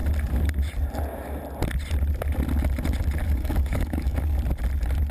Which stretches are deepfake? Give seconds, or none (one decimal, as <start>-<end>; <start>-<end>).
3.2-4.2